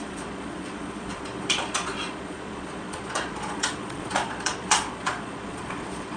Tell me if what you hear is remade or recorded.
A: remade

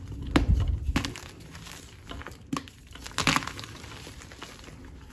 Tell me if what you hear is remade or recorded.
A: recorded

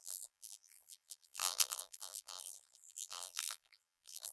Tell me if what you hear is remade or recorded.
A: remade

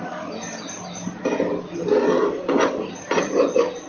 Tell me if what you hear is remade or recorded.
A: recorded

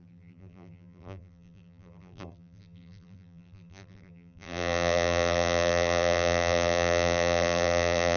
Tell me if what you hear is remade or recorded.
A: remade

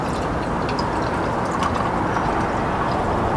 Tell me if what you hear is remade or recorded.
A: recorded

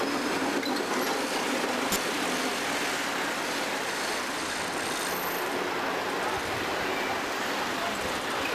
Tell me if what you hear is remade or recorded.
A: recorded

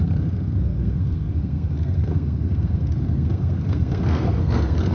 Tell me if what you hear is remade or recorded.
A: remade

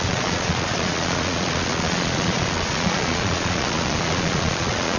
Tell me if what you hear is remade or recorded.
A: remade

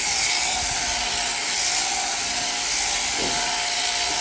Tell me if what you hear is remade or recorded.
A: recorded